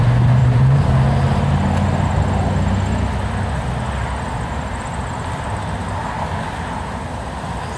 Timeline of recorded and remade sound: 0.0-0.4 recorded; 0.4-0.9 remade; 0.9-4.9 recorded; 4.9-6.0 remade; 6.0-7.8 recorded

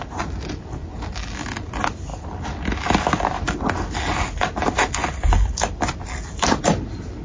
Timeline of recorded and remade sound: 0.0-5.0 recorded; 5.0-6.5 remade; 6.5-7.2 recorded

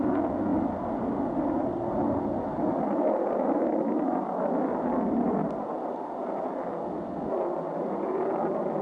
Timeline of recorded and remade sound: 0.0-8.8 recorded

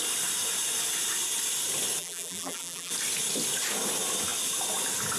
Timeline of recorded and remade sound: 0.0-2.0 recorded; 2.0-2.9 remade; 2.9-5.2 recorded

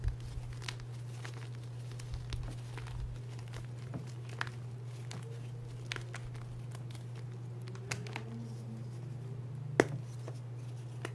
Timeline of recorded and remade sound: 0.0-3.4 recorded; 3.4-4.1 remade; 4.1-11.1 recorded

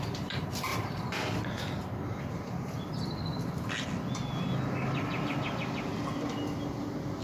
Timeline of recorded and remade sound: 0.0-0.7 recorded; 0.7-1.3 remade; 1.3-7.2 recorded